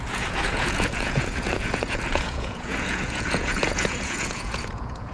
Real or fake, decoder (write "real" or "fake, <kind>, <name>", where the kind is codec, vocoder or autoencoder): fake, vocoder, Vocos